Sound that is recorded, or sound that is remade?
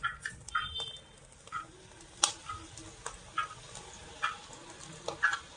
recorded